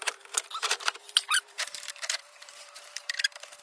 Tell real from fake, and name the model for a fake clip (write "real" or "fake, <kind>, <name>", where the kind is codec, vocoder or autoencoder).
fake, vocoder, BigVGAN v2